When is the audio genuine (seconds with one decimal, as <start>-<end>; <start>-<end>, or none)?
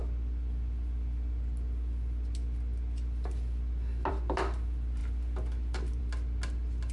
0.0-6.9